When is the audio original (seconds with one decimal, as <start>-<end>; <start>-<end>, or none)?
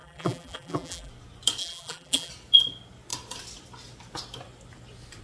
1.1-1.6; 2.3-5.2